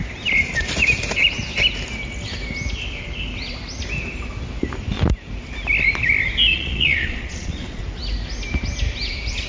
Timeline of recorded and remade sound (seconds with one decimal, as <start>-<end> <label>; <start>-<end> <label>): 0.0-6.5 recorded; 6.5-7.8 remade; 7.8-9.5 recorded